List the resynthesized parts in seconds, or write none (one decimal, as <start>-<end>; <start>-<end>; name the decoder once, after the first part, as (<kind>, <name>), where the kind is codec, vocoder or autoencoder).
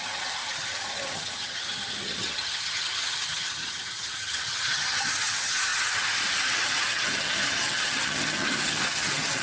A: 0.0-9.4 (vocoder, HiFi-GAN)